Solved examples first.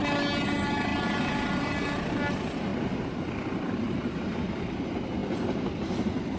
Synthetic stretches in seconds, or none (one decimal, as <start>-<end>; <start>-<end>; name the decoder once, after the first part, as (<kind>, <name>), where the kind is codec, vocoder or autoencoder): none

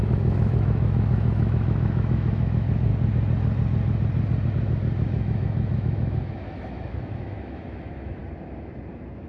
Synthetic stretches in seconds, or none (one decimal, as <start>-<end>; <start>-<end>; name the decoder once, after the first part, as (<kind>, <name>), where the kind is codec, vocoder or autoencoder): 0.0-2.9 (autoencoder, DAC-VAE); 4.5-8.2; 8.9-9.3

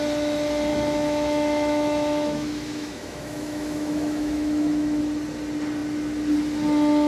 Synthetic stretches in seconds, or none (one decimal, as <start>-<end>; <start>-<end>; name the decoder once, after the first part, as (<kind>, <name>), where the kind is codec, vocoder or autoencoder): 0.7-5.0 (autoencoder, DAC-VAE)

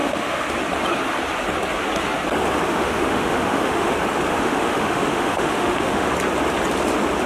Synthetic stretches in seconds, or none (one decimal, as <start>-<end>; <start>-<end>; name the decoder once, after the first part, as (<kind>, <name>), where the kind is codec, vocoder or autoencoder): 0.0-0.5 (autoencoder, DAC-VAE); 2.7-3.9; 4.3-6.1